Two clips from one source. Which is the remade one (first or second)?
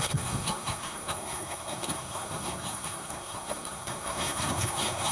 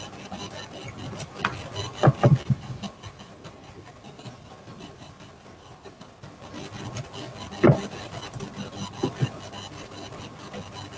first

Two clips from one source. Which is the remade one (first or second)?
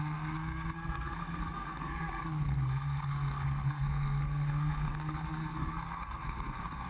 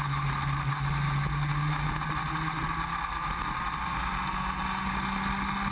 first